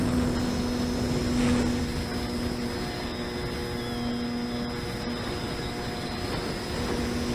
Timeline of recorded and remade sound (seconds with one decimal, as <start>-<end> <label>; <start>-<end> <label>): 0.0-7.3 recorded